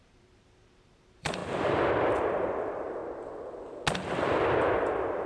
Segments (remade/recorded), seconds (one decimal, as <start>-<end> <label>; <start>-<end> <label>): 0.0-1.4 remade; 1.4-2.1 recorded; 2.1-3.0 remade; 3.0-4.8 recorded; 4.8-5.3 remade